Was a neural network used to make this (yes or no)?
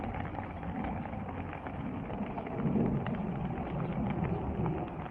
no